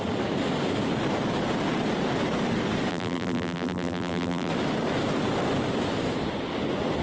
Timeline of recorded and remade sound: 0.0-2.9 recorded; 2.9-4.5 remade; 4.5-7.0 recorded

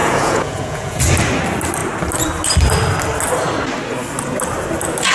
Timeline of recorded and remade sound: 0.0-1.0 remade; 1.0-5.1 recorded

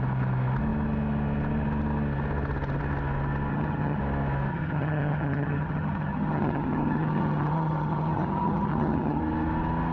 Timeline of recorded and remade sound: 0.0-3.5 recorded; 3.5-4.0 remade; 4.0-4.5 recorded; 4.5-9.2 remade; 9.2-9.9 recorded

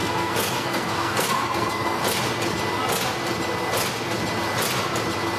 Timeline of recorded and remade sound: 0.0-2.0 remade; 2.0-5.4 recorded